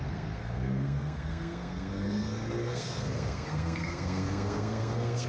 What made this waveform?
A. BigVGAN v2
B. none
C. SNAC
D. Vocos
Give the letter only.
C